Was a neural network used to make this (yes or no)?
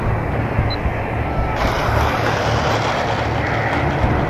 no